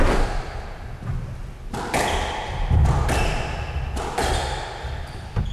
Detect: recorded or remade recorded